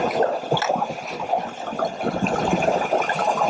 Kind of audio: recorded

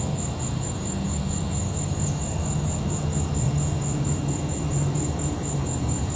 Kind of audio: recorded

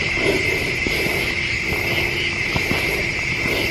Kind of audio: recorded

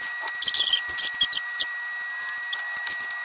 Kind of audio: recorded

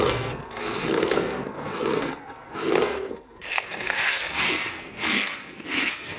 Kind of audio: remade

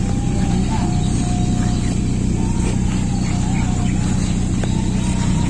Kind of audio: recorded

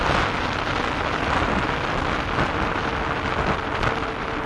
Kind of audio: recorded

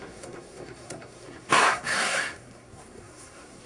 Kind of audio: remade